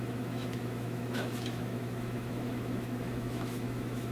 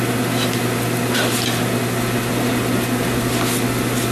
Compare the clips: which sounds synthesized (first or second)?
first